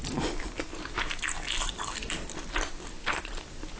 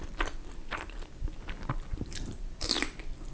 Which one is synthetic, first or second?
second